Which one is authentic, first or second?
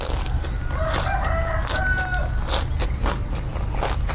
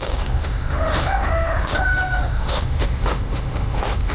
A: first